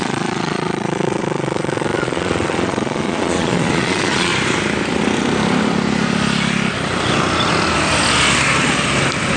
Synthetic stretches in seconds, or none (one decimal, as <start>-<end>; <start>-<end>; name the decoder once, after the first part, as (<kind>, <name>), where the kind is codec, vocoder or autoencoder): 0.0-4.3 (vocoder, Vocos)